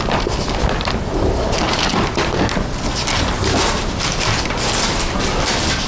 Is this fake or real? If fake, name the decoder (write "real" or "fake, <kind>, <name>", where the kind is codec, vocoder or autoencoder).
real